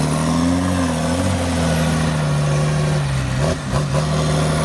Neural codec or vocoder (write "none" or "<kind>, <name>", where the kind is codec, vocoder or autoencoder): none